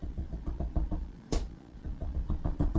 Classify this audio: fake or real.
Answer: fake